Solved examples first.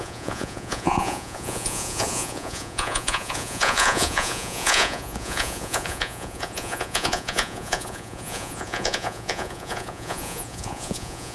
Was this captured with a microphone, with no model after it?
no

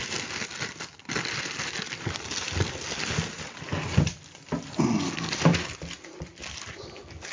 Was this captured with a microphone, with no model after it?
yes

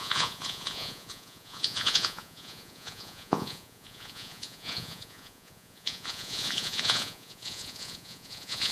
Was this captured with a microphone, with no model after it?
no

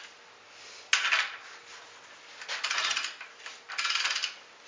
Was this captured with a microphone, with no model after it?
yes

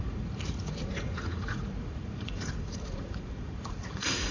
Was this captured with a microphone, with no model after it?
no